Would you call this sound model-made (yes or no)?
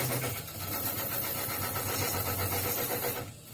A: no